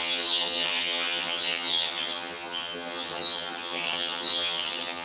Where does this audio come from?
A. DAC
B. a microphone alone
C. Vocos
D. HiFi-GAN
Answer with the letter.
D